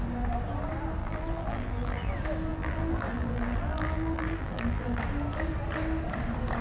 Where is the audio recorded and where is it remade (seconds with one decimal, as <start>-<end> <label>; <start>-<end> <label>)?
0.0-1.0 recorded; 1.0-2.1 remade; 2.1-2.5 recorded; 2.5-5.0 remade; 5.0-6.6 recorded

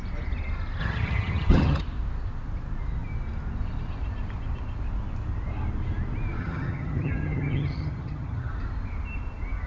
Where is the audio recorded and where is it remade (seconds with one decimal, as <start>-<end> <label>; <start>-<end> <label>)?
0.0-0.8 recorded; 0.8-1.8 remade; 1.8-6.4 recorded; 6.4-8.5 remade; 8.5-9.7 recorded

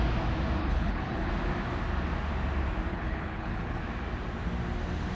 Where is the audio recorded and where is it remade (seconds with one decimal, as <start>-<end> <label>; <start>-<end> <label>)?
0.0-0.6 recorded; 0.6-1.3 remade; 1.3-2.9 recorded; 2.9-3.8 remade; 3.8-5.1 recorded

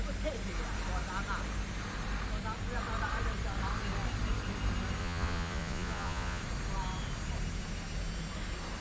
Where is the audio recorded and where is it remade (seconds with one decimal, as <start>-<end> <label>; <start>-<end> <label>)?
0.0-5.0 recorded; 5.0-6.4 remade; 6.4-8.8 recorded

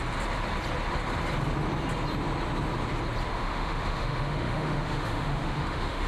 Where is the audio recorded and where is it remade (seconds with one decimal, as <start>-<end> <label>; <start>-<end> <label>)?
0.0-3.3 recorded; 3.3-6.1 remade